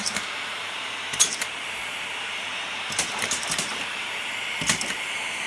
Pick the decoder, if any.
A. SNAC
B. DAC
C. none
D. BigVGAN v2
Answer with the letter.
D